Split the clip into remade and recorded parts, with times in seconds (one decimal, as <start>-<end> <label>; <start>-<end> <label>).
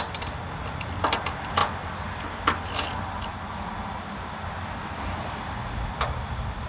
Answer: 0.0-6.7 recorded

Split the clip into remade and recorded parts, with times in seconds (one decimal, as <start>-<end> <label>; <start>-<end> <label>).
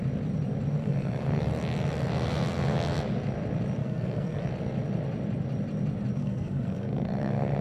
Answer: 0.0-0.8 recorded; 0.8-1.4 remade; 1.4-3.8 recorded; 3.8-4.5 remade; 4.5-6.2 recorded; 6.2-7.6 remade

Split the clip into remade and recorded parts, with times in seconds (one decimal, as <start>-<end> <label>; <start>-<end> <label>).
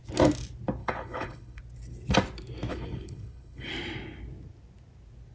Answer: 0.0-0.8 recorded; 0.8-1.6 remade; 1.6-2.7 recorded; 2.7-3.7 remade; 3.7-5.3 recorded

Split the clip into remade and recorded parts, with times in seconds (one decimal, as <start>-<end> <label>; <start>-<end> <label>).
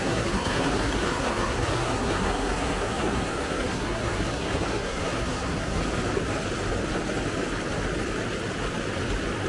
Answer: 0.0-5.8 remade; 5.8-9.5 recorded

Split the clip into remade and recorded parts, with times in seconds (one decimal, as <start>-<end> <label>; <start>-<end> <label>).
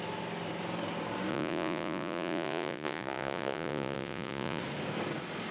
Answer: 0.0-1.3 recorded; 1.3-4.6 remade; 4.6-5.5 recorded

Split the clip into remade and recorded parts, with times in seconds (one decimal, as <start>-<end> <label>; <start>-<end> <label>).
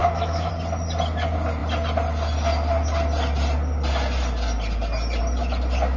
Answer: 0.0-0.5 remade; 0.5-6.0 recorded